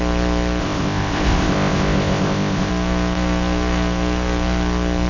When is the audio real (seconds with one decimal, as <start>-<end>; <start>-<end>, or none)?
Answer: 0.0-0.6; 2.7-5.1